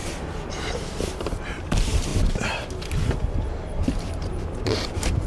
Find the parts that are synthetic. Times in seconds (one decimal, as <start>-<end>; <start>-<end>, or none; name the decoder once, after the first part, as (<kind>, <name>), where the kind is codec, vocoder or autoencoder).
0.5-2.1 (vocoder, BigVGAN v2); 3.4-5.3